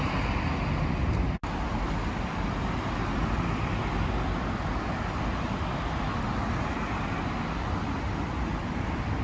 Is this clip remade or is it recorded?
recorded